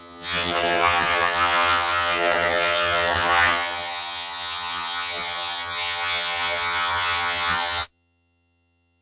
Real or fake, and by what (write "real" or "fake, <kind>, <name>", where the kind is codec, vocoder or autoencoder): fake, vocoder, HiFi-GAN